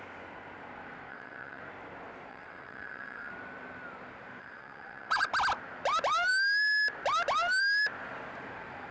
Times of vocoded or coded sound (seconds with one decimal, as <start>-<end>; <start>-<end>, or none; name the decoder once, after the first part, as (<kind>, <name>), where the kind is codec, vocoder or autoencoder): 1.1-1.6 (vocoder, WaveNeXt); 2.3-3.3; 4.4-5.3